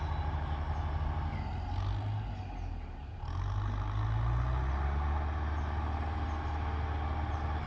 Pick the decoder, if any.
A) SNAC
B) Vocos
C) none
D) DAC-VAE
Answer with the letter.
C